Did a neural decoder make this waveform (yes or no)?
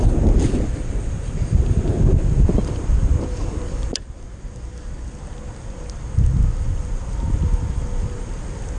no